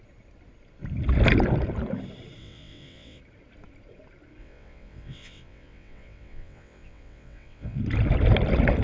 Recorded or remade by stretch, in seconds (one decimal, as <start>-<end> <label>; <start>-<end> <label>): 0.0-2.4 recorded; 2.4-3.2 remade; 3.2-4.4 recorded; 4.4-7.8 remade; 7.8-8.8 recorded